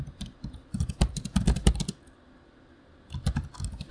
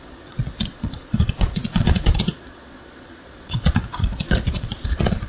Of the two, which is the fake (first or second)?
second